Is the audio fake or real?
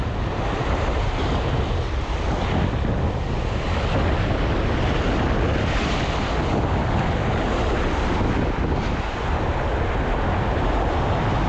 real